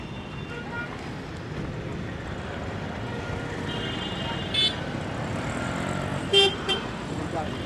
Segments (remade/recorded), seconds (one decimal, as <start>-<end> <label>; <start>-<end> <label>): 0.0-6.1 recorded; 6.1-7.2 remade; 7.2-7.7 recorded